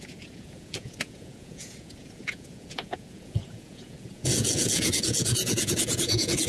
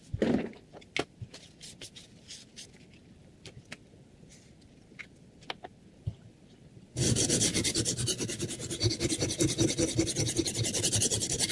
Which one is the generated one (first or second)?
first